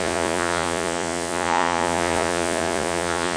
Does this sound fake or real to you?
fake